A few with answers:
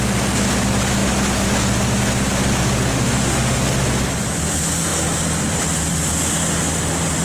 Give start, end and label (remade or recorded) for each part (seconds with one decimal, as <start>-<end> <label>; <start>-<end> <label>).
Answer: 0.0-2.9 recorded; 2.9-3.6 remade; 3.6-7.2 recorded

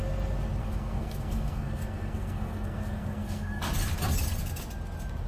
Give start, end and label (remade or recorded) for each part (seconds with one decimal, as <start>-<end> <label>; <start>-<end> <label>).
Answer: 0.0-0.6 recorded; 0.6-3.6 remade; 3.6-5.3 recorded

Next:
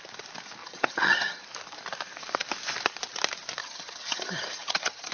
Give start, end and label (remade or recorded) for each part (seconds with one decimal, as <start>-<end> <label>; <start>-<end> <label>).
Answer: 0.0-0.6 recorded; 0.6-1.4 remade; 1.4-3.6 recorded; 3.6-5.1 remade

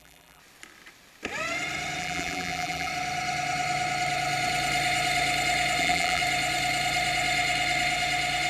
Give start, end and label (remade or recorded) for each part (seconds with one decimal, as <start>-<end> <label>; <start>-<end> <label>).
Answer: 0.0-0.4 remade; 0.4-2.0 recorded; 2.0-2.9 remade; 2.9-5.8 recorded; 5.8-6.2 remade; 6.2-8.5 recorded

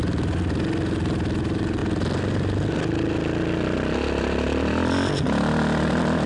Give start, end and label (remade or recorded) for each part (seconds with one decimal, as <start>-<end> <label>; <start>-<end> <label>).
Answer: 0.0-6.3 recorded

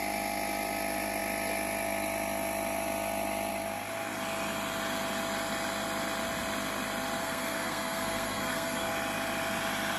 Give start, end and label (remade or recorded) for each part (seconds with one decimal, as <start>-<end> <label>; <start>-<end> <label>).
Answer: 0.0-7.2 recorded; 7.2-8.9 remade; 8.9-10.0 recorded